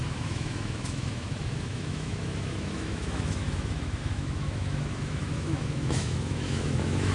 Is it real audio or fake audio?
fake